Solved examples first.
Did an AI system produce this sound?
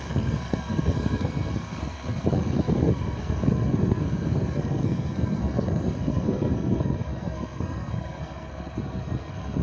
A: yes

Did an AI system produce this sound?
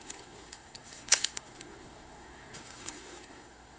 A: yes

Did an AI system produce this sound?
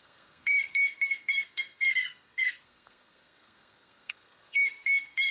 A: yes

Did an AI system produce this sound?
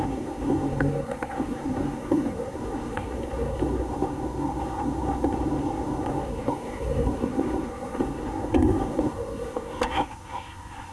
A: yes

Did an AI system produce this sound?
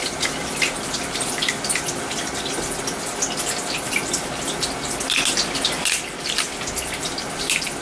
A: no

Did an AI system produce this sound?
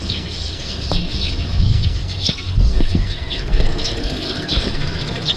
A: yes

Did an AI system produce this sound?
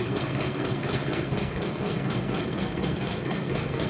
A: yes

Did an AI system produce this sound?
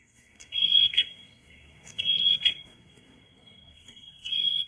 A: yes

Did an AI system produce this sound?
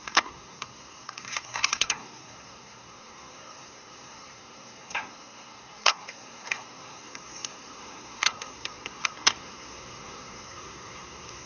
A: yes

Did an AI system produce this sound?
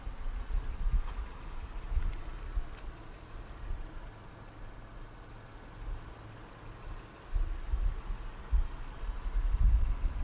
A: no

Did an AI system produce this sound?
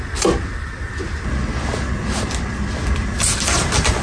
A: no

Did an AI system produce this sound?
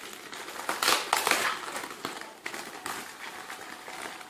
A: no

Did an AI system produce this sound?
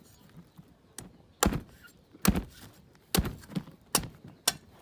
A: no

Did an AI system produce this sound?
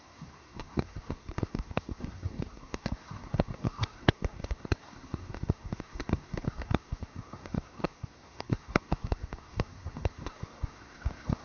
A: yes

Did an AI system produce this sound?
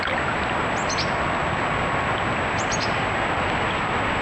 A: no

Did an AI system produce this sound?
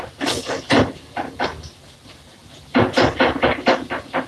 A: no